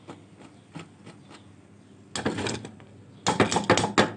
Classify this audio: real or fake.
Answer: real